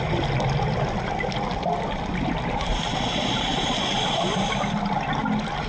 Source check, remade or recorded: recorded